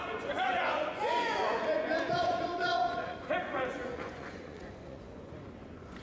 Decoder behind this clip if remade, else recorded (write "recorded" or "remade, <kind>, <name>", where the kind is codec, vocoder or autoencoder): remade, vocoder, Vocos